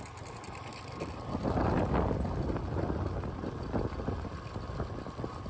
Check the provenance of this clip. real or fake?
real